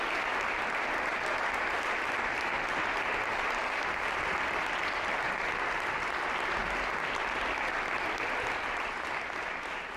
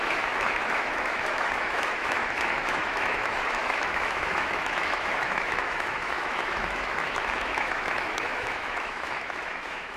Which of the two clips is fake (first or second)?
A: second